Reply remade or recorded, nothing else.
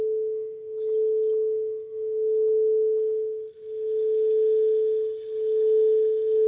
recorded